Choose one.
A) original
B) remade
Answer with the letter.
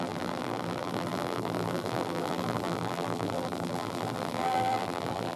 B